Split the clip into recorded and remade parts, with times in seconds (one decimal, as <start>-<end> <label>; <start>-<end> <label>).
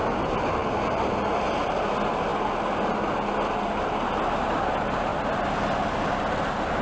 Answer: 0.0-6.8 recorded